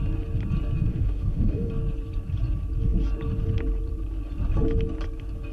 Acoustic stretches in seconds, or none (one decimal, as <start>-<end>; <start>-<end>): 0.0-0.9; 1.7-5.5